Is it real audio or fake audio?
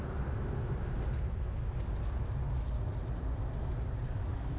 real